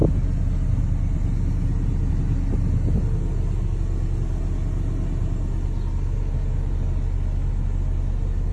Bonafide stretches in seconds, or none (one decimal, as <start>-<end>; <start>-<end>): 0.0-8.5